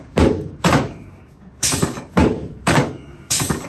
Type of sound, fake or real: fake